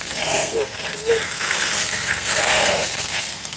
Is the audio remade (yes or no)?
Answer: yes